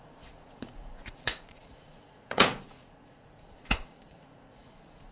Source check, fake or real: fake